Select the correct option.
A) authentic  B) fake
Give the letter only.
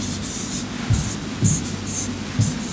A